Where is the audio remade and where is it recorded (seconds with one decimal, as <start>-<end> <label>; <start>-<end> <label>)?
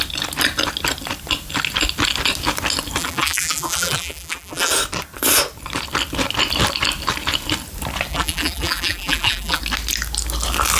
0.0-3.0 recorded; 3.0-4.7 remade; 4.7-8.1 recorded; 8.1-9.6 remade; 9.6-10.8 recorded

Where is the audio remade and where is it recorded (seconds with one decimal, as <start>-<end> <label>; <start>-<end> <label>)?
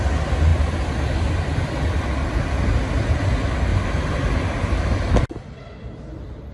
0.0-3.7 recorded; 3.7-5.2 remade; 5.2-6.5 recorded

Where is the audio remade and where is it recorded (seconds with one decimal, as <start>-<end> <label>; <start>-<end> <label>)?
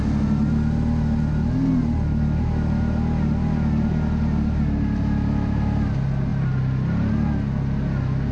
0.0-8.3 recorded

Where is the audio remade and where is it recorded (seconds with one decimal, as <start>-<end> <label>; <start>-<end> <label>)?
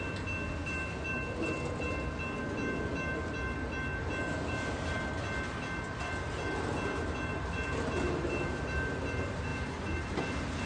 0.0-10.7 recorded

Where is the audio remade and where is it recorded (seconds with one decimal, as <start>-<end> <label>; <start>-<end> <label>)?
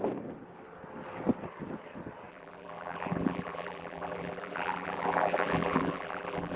0.0-2.3 recorded; 2.3-6.6 remade